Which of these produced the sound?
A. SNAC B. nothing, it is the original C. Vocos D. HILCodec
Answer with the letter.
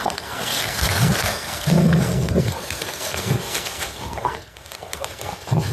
A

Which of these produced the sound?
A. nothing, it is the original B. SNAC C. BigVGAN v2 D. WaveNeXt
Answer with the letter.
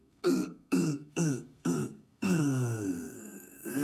B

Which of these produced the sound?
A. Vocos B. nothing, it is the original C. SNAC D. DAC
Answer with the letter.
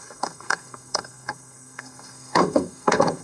C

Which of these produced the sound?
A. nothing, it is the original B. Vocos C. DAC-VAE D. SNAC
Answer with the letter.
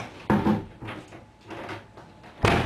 A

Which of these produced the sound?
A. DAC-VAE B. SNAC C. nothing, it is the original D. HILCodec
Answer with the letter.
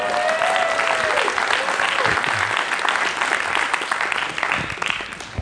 C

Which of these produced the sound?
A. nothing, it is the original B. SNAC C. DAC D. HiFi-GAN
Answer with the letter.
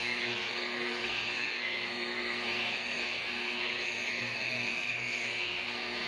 B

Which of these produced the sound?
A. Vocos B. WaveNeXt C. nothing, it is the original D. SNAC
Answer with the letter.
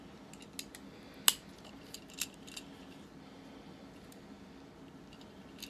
C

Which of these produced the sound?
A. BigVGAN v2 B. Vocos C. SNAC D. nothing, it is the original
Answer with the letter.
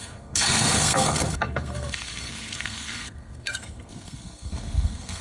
C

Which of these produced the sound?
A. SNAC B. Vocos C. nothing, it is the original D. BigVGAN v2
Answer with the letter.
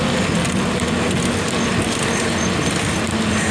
C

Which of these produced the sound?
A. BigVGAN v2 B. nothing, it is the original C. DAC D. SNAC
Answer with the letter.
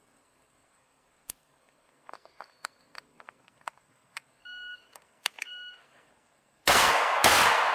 D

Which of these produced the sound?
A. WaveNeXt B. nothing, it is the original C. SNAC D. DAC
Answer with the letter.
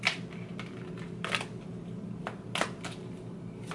B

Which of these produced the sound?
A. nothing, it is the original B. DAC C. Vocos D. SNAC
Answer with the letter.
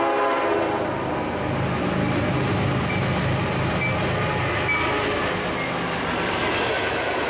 A